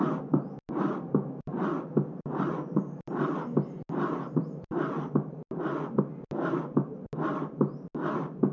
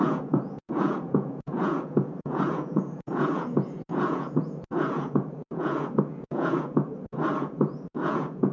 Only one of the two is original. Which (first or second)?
first